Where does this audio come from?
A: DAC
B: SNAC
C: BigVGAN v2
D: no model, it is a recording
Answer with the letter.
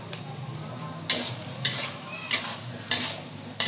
D